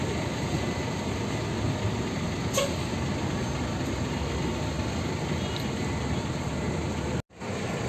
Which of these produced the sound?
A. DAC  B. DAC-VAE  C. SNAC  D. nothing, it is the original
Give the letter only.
D